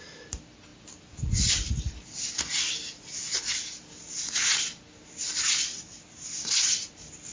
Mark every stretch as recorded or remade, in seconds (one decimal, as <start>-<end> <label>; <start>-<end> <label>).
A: 0.0-7.3 recorded